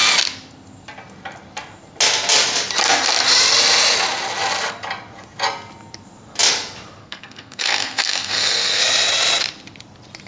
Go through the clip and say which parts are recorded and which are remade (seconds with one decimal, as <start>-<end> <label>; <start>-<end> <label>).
0.0-7.0 recorded; 7.0-8.8 remade; 8.8-10.3 recorded